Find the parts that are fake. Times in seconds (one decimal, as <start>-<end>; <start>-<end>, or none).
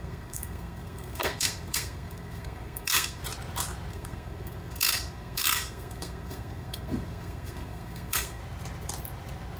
0.0-3.2; 3.9-8.4